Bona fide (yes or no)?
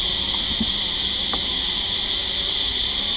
yes